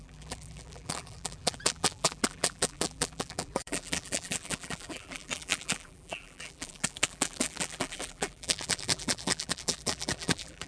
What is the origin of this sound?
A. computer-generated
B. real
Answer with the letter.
A